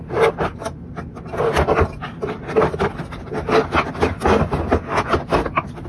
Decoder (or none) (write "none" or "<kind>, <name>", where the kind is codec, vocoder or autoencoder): none